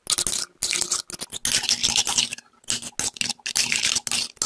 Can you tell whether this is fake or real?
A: real